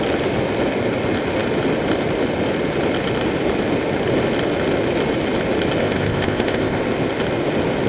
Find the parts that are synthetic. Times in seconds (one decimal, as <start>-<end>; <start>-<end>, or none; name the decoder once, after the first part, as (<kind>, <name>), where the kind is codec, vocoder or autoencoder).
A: 5.8-6.8 (codec, ZipCodec)